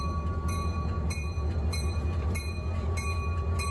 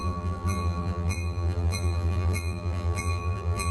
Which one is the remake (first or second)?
second